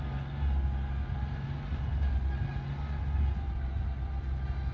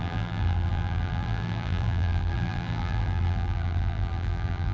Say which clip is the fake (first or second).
second